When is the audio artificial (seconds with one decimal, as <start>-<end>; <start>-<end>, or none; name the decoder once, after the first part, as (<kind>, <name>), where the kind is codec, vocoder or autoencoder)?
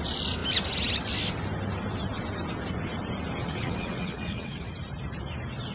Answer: 3.4-4.7 (vocoder, WaveNeXt)